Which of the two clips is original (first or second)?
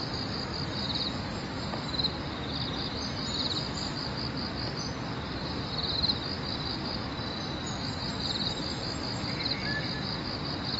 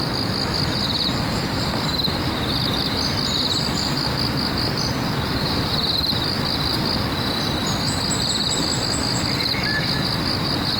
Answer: first